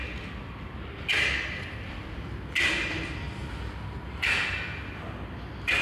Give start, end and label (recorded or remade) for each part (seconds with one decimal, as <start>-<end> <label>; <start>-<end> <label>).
0.0-5.8 recorded